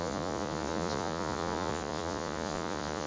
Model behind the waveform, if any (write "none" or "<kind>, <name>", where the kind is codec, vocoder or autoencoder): vocoder, Vocos